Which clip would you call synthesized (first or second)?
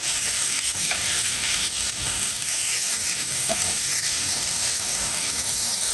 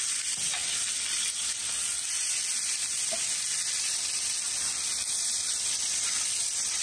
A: first